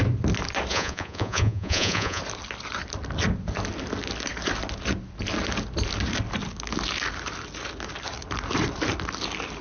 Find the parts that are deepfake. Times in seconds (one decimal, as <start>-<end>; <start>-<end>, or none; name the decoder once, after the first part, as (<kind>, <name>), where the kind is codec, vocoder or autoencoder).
0.7-2.2 (vocoder, Vocos)